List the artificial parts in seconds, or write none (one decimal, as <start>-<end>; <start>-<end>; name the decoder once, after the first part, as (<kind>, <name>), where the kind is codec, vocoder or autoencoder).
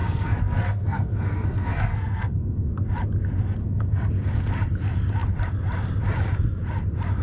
0.0-2.7 (codec, SNAC); 3.6-4.1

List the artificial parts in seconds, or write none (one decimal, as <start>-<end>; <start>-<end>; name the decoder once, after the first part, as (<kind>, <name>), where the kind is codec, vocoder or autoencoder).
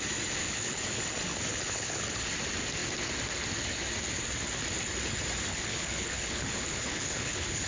0.4-1.0 (codec, HILCodec); 1.5-2.3; 5.5-7.7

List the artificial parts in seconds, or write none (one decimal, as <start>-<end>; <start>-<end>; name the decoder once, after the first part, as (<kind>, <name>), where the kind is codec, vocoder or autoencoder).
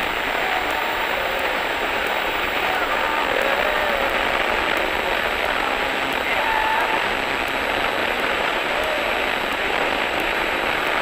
0.8-3.0 (vocoder, BigVGAN v2); 8.0-8.7; 9.5-10.6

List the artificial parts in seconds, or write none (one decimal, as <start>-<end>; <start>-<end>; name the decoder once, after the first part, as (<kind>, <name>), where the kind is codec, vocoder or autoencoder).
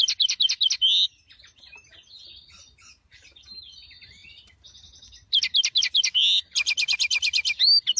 none